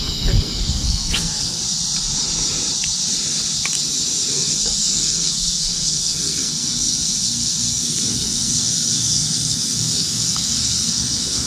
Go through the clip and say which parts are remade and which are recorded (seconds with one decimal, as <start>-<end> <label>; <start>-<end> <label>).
0.0-1.6 remade; 1.6-4.3 recorded; 4.3-11.5 remade